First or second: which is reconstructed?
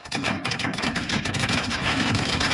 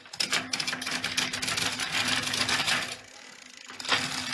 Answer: first